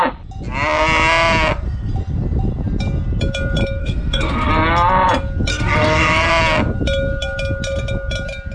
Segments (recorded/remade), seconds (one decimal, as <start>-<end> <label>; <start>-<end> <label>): 0.0-3.8 recorded; 3.8-4.5 remade; 4.5-5.5 recorded; 5.5-6.3 remade; 6.3-8.5 recorded